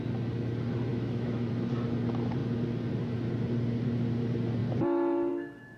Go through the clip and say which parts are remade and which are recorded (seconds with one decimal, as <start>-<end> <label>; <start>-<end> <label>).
0.0-0.9 recorded; 0.9-1.5 remade; 1.5-5.8 recorded